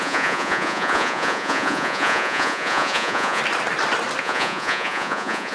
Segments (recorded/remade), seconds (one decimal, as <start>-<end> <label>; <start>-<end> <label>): 0.0-3.4 remade; 3.4-4.2 recorded; 4.2-5.5 remade